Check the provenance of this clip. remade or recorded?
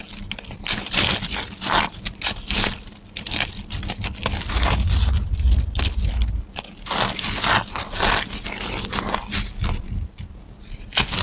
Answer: recorded